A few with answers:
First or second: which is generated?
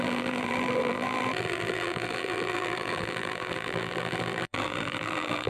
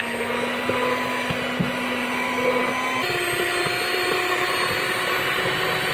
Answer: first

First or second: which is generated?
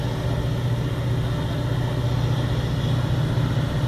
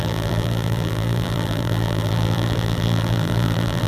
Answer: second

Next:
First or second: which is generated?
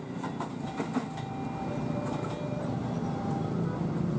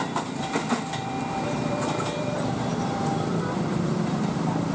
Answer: second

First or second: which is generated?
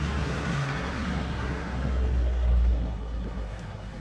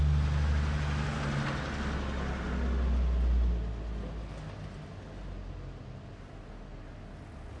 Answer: first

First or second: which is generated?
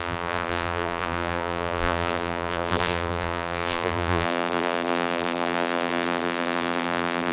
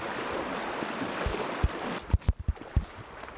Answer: first